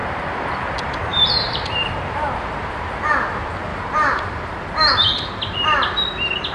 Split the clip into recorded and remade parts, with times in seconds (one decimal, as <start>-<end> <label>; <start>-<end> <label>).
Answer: 0.0-0.7 remade; 0.7-1.1 recorded; 1.1-1.9 remade; 1.9-3.7 recorded; 3.7-4.5 remade; 4.5-6.5 recorded